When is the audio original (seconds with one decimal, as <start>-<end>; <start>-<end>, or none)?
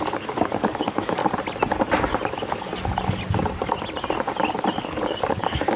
1.2-2.3; 2.7-4.8